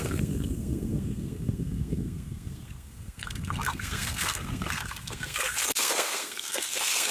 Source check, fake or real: fake